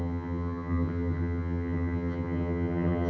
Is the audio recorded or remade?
remade